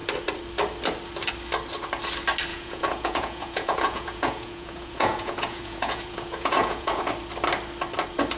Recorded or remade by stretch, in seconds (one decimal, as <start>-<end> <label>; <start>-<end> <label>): 0.0-2.5 recorded; 2.5-7.1 remade; 7.1-8.4 recorded